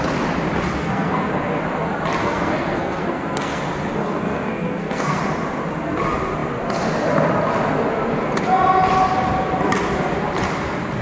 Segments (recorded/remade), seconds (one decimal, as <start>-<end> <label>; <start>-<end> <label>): 0.0-0.8 recorded; 0.8-1.3 remade; 1.3-2.2 recorded; 2.2-3.6 remade; 3.6-4.0 recorded; 4.0-5.2 remade; 5.2-11.0 recorded